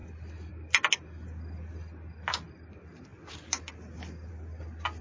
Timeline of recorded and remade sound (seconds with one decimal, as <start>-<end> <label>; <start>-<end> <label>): 0.0-5.0 recorded